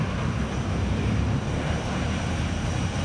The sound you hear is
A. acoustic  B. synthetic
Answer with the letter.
A